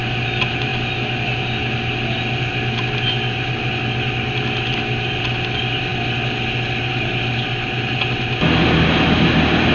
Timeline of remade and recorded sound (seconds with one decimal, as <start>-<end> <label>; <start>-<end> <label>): 0.0-9.7 recorded